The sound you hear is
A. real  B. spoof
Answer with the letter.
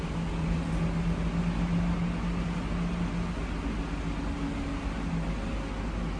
A